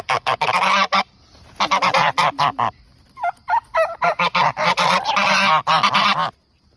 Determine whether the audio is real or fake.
real